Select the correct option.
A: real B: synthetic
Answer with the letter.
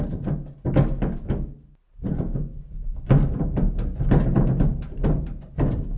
A